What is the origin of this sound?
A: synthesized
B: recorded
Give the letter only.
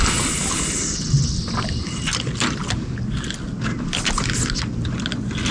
B